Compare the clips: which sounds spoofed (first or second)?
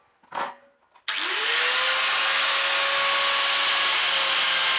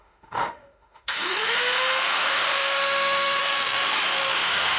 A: second